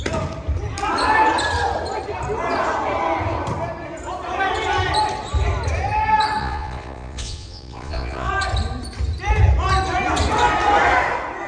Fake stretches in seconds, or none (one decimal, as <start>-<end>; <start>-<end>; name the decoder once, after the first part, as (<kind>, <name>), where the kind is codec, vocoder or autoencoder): 6.4-8.3 (vocoder, Vocos)